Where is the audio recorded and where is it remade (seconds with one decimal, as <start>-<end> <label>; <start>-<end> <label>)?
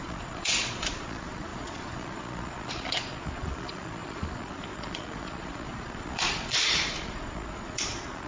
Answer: 0.0-8.3 remade